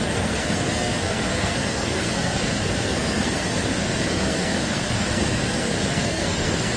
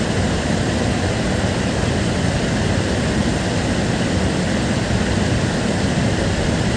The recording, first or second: second